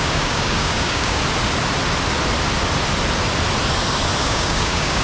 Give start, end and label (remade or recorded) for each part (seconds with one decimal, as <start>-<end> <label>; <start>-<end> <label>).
0.0-1.2 remade; 1.2-4.2 recorded; 4.2-5.0 remade